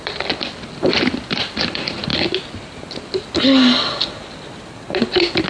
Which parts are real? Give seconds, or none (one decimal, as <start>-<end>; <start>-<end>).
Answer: 2.1-5.0